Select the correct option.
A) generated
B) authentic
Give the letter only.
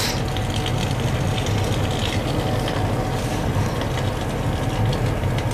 B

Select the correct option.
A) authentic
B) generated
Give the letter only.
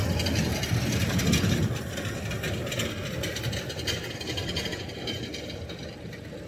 A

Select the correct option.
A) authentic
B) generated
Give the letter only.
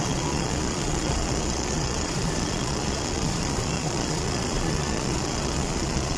B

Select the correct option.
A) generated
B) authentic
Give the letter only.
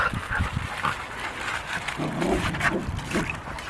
B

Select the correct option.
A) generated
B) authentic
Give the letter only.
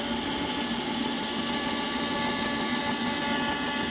B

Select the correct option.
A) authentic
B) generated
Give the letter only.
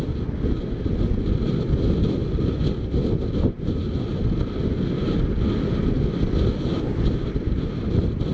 A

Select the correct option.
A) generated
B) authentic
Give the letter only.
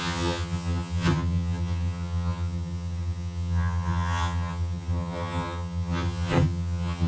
A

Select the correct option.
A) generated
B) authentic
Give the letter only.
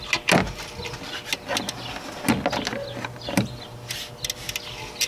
B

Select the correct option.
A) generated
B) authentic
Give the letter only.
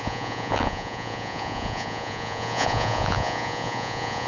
A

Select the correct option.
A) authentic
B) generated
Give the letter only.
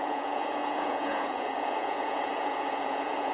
B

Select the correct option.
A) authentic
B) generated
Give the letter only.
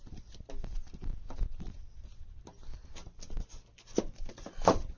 A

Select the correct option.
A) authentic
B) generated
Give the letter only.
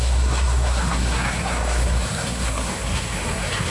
B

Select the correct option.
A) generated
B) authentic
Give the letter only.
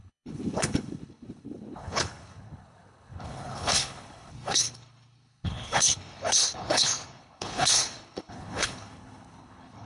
A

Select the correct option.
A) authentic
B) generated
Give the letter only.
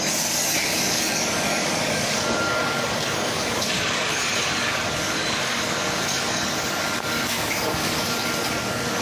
B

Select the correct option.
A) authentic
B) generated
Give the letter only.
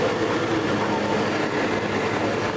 A